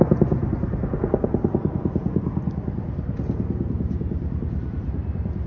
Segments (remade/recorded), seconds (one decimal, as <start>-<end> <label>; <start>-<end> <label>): 0.0-5.5 recorded

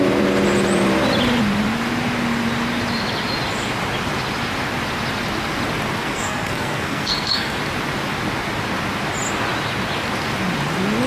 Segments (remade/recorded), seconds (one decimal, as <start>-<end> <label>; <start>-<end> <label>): 0.0-6.0 recorded; 6.0-7.6 remade; 7.6-11.1 recorded